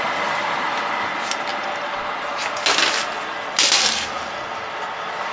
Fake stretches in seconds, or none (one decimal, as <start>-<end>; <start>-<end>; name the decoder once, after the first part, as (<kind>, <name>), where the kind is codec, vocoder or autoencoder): none

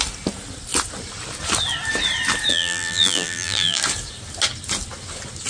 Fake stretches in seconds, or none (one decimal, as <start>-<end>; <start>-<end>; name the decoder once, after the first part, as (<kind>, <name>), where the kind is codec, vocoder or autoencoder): 2.5-3.8 (vocoder, BigVGAN v2)

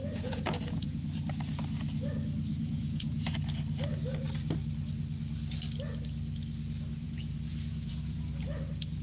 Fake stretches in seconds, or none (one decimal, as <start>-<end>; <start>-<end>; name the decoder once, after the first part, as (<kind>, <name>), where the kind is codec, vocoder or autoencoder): 0.0-1.0 (vocoder, Vocos); 2.5-3.3; 7.0-8.3

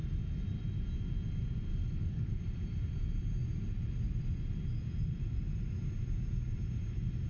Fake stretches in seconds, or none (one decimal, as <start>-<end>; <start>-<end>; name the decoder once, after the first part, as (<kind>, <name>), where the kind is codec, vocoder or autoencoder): 1.7-2.3 (codec, DAC)

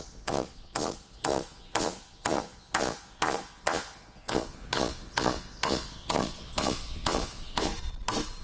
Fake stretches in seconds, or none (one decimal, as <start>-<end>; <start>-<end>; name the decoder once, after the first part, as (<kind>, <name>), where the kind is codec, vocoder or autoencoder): 0.0-7.7 (vocoder, Vocos)

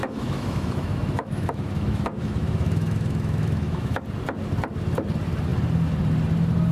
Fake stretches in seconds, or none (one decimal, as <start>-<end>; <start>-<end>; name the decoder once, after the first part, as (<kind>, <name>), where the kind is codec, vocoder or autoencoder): 0.0-4.0 (autoencoder, DAC-VAE)